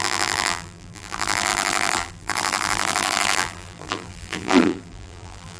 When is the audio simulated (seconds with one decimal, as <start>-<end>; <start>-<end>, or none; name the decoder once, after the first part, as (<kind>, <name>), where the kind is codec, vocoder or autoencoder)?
0.0-5.6 (vocoder, BigVGAN v2)